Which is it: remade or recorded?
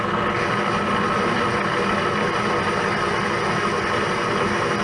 recorded